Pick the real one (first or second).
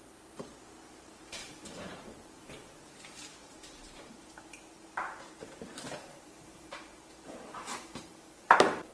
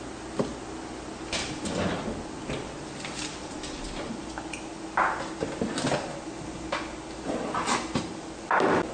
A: second